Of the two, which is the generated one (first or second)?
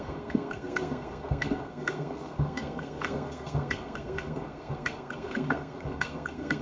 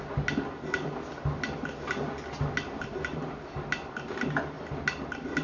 first